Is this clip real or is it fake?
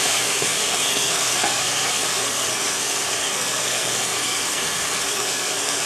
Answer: fake